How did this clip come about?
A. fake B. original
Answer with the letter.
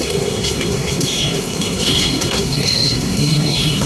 A